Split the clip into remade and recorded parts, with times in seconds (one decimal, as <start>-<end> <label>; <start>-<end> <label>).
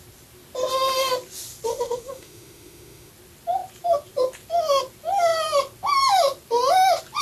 0.0-1.7 recorded; 1.7-3.1 remade; 3.1-7.2 recorded